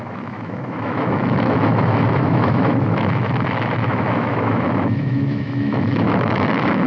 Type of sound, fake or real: fake